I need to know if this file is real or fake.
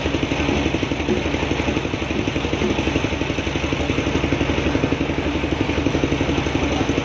real